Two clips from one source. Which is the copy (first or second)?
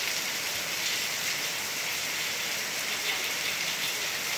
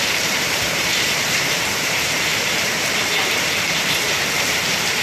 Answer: second